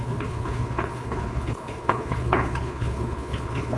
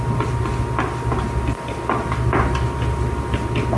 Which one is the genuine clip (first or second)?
second